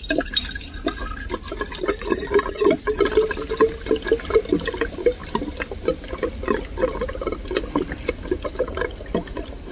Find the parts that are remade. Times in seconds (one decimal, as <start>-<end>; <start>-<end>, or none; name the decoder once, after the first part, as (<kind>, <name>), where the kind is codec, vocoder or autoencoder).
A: 1.9-2.8 (vocoder, Vocos)